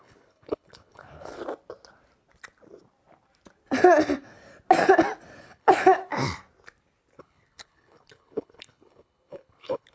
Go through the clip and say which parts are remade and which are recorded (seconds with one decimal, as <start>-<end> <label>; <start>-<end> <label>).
0.0-1.4 remade; 1.4-5.4 recorded; 5.4-6.1 remade; 6.1-7.2 recorded; 7.2-9.9 remade